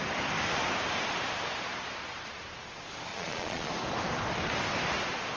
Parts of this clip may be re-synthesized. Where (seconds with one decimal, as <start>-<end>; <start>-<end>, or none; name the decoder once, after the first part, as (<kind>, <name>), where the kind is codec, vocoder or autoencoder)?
3.1-3.7 (vocoder, Vocos)

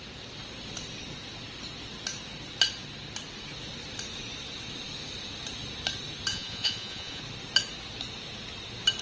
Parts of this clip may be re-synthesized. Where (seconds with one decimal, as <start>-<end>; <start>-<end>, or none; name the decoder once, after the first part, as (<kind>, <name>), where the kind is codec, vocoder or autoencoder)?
6.3-7.2 (vocoder, Vocos)

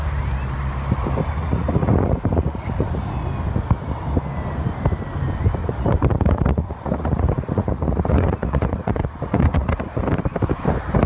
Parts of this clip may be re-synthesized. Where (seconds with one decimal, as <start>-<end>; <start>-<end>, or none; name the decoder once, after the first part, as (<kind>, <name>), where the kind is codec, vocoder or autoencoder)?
1.4-3.1 (vocoder, Vocos); 5.6-10.0

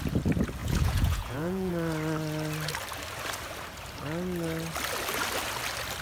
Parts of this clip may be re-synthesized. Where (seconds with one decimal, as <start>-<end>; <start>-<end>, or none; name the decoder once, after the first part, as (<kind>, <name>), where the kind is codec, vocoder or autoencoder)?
0.6-1.7 (vocoder, Vocos)

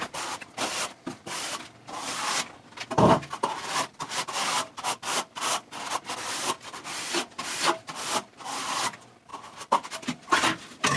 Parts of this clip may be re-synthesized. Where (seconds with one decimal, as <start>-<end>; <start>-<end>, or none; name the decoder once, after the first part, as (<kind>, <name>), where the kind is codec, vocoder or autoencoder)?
none

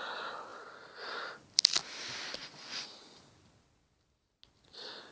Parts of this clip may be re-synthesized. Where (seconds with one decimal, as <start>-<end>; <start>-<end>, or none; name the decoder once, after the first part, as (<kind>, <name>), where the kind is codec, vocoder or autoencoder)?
2.4-3.2 (vocoder, Vocos)

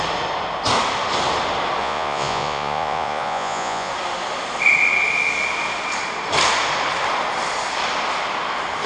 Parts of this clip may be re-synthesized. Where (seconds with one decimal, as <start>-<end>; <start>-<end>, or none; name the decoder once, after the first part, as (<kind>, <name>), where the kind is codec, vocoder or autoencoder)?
1.8-3.9 (vocoder, Vocos)